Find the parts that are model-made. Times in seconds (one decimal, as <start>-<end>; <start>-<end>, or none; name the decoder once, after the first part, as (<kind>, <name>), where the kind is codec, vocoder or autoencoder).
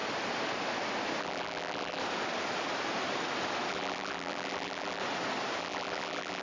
1.2-2.0 (vocoder, BigVGAN v2); 3.7-5.0; 5.6-6.4